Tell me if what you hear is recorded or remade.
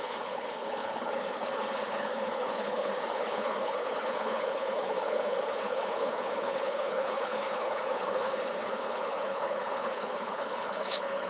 remade